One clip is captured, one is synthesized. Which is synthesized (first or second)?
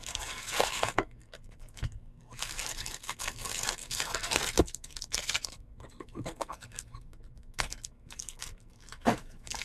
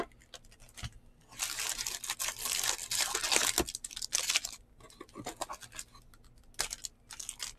first